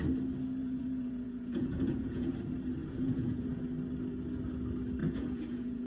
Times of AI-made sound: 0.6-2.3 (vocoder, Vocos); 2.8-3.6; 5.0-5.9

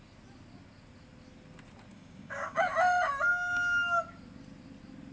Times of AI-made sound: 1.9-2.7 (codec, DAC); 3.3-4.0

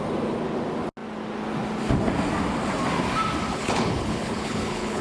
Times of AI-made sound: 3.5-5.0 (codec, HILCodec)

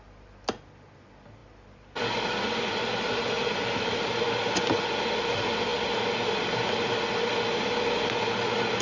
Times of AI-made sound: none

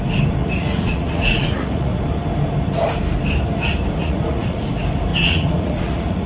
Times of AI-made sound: 0.4-2.0 (vocoder, Vocos); 4.0-4.6; 5.1-6.3

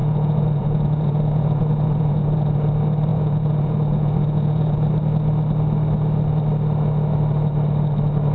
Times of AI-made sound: 0.0-2.7 (vocoder, Vocos); 3.1-4.9